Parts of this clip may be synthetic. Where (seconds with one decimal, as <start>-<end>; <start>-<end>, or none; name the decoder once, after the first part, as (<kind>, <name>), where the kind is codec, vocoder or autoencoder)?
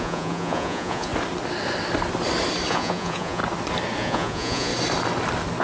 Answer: 0.0-1.1 (vocoder, Vocos); 2.7-3.4; 4.0-4.7